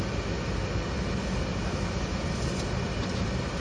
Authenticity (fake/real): real